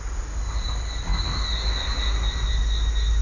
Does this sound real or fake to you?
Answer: real